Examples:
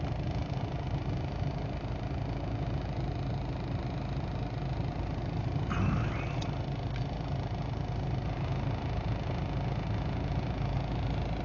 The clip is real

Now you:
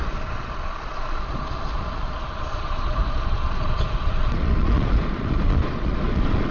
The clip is fake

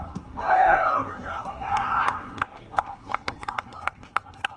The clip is fake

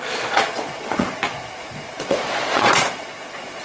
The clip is fake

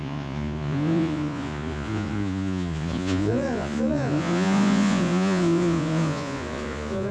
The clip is fake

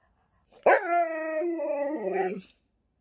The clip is real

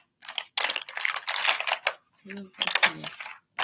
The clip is real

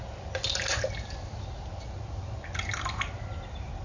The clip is real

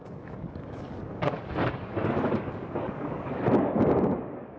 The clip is fake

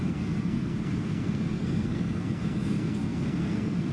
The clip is fake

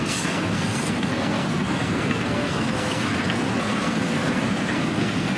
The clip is fake